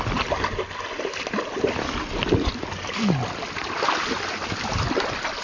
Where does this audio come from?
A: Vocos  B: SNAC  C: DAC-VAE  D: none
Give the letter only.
D